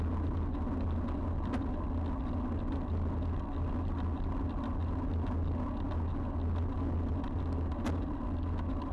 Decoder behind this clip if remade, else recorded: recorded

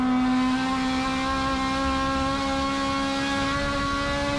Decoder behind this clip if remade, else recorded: recorded